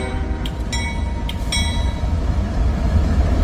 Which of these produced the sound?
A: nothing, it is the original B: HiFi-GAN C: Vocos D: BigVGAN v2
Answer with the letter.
A